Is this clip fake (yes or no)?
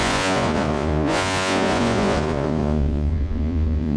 yes